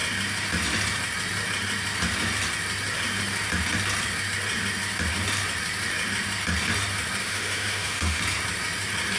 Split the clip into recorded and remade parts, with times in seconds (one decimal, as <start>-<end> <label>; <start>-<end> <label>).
0.0-7.2 recorded; 7.2-8.2 remade; 8.2-9.2 recorded